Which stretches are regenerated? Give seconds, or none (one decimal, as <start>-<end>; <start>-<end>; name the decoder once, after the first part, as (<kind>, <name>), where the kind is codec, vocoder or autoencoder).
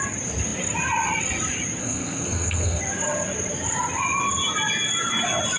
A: 1.8-2.8 (codec, SNAC)